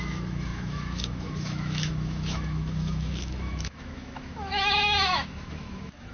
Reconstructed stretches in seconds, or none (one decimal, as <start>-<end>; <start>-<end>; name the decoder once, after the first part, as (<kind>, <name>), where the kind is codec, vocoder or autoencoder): 0.0-6.1 (autoencoder, DAC-VAE)